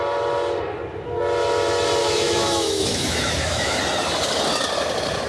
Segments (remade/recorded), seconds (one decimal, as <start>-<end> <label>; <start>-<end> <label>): 0.0-2.0 recorded; 2.0-3.8 remade; 3.8-5.3 recorded